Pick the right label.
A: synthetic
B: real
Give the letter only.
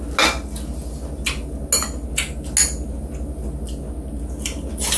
B